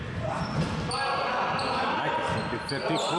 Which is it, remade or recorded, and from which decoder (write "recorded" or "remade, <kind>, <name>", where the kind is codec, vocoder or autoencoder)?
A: recorded